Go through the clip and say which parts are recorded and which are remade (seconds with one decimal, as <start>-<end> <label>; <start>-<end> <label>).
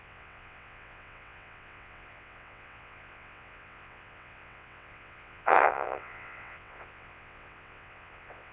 0.0-8.5 remade